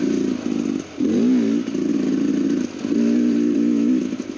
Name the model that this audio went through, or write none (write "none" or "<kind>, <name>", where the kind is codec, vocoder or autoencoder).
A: none